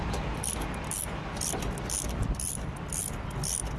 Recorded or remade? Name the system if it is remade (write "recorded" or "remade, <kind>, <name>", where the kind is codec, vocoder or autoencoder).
recorded